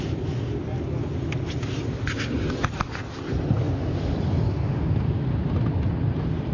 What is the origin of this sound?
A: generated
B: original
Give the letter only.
B